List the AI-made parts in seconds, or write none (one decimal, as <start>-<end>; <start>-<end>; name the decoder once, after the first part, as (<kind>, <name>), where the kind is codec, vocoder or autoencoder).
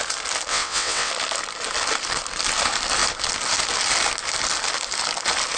0.5-1.1 (vocoder, WaveNeXt)